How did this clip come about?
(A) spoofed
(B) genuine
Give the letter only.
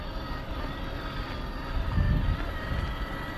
B